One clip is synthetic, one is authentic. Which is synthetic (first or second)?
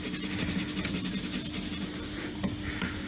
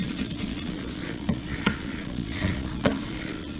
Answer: second